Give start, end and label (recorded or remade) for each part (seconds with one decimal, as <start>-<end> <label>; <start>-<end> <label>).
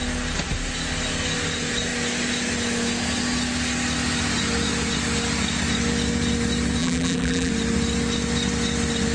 0.0-6.8 recorded; 6.8-7.5 remade; 7.5-9.1 recorded